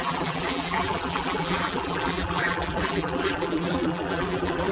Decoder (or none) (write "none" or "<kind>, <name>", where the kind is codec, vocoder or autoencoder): vocoder, BigVGAN v2